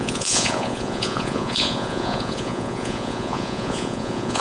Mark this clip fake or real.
fake